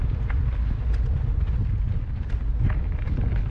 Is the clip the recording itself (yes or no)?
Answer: yes